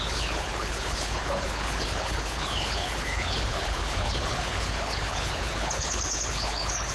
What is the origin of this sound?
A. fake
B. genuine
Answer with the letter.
A